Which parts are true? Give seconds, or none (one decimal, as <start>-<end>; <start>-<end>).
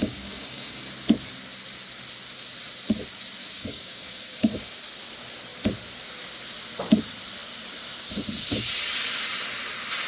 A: 0.8-3.4; 4.8-10.1